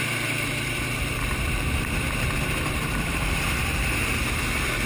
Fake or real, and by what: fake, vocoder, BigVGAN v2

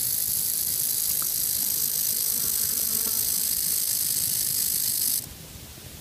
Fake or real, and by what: real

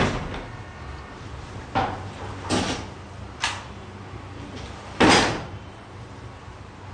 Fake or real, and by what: real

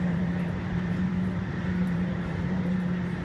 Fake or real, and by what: fake, vocoder, BigVGAN v2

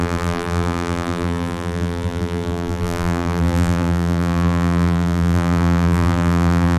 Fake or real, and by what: fake, vocoder, BigVGAN v2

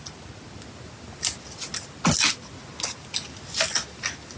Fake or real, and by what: real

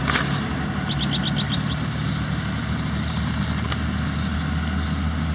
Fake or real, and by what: real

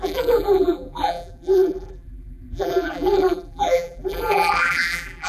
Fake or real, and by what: fake, vocoder, BigVGAN v2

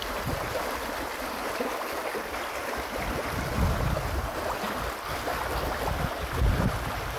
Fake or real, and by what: fake, vocoder, BigVGAN v2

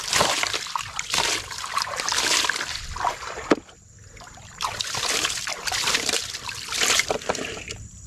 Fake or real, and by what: fake, vocoder, BigVGAN v2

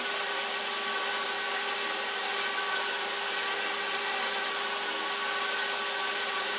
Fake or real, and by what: real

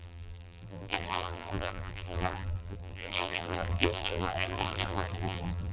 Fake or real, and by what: fake, vocoder, BigVGAN v2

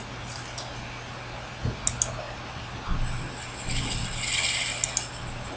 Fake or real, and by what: real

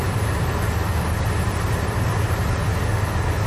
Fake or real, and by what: real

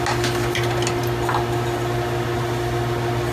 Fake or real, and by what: real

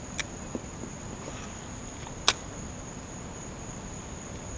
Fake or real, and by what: real